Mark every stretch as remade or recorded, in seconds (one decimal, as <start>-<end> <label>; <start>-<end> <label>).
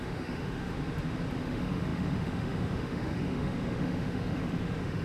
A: 0.0-0.7 remade; 0.7-1.4 recorded; 1.4-5.0 remade